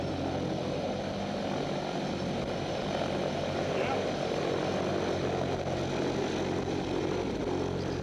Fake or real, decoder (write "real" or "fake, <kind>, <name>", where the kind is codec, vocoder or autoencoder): real